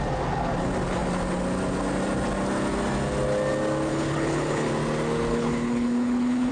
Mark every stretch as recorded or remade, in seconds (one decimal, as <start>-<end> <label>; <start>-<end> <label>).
0.0-3.9 recorded; 3.9-4.7 remade; 4.7-5.3 recorded; 5.3-6.5 remade

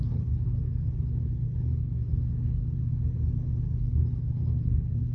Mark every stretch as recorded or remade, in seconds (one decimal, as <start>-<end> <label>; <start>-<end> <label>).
0.0-2.1 remade; 2.1-3.5 recorded; 3.5-5.1 remade

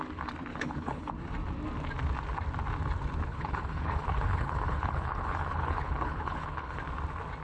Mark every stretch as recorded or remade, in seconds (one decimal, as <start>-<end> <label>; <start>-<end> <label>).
0.0-0.5 recorded; 0.5-1.1 remade; 1.1-3.3 recorded; 3.3-6.8 remade; 6.8-7.4 recorded

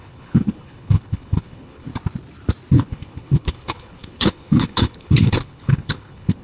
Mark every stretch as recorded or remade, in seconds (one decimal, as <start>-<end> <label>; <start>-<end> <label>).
0.0-1.9 remade; 1.9-2.7 recorded; 2.7-6.4 remade

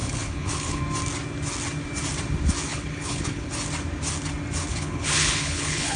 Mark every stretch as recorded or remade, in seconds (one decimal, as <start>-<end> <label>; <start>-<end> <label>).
0.0-0.8 remade; 0.8-2.7 recorded; 2.7-3.5 remade; 3.5-4.7 recorded; 4.7-6.0 remade